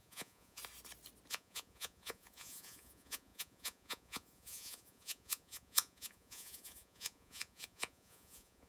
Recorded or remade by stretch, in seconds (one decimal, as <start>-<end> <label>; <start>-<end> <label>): 0.0-0.6 remade; 0.6-1.3 recorded; 1.3-8.7 remade